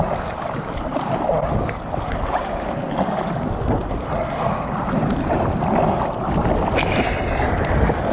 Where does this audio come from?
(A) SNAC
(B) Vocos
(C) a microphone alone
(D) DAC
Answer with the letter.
C